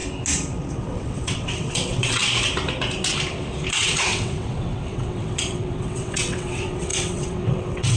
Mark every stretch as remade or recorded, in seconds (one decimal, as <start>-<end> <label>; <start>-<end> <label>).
0.0-0.8 recorded; 0.8-2.2 remade; 2.2-3.7 recorded; 3.7-8.0 remade